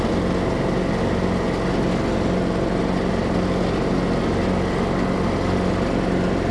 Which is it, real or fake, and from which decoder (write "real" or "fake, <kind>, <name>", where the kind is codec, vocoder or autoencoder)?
real